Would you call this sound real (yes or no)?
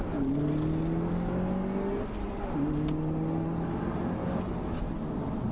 yes